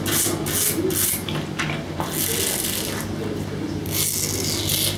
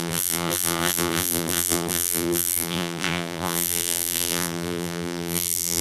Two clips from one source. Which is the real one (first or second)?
first